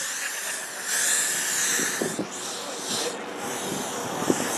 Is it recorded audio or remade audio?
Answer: recorded